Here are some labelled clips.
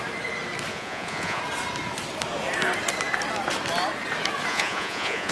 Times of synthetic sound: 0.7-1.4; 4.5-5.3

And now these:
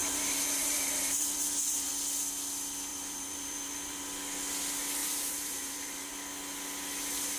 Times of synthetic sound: 0.0-1.9; 2.9-4.0; 5.0-6.1

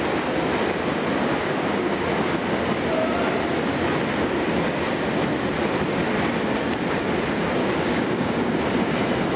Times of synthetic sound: 1.4-2.0; 7.6-8.6

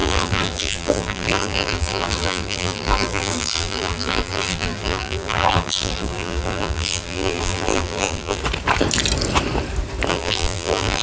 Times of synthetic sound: 0.0-8.4; 10.1-11.0

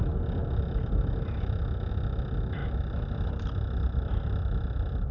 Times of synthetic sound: none

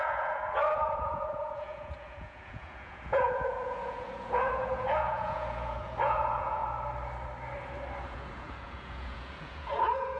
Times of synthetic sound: 0.0-6.6; 8.0-10.2